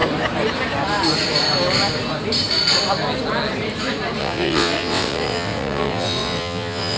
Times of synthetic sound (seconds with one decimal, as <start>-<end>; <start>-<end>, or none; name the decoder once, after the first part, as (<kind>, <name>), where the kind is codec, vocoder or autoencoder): 4.2-7.0 (vocoder, WaveNeXt)